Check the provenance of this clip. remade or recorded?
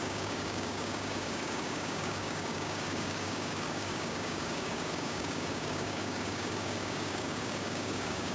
remade